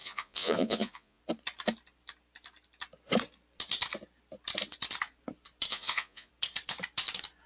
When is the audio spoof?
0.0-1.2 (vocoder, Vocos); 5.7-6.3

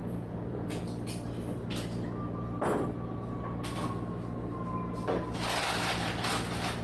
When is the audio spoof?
0.0-0.8 (vocoder, Vocos)

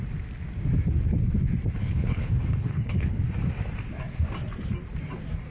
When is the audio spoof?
1.8-3.1 (codec, HILCodec)

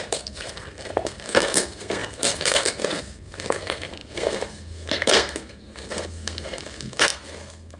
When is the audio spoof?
0.0-7.8 (codec, SNAC)

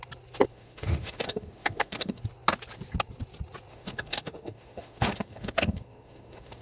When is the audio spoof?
0.5-2.2 (autoencoder, DAC-VAE); 3.7-6.6

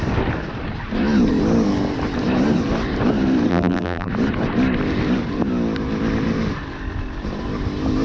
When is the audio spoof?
3.5-4.1 (vocoder, BigVGAN v2)

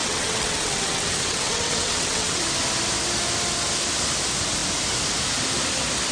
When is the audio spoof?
0.0-2.4 (vocoder, WaveNeXt)